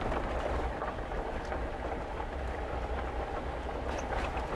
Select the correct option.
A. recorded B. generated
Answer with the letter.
A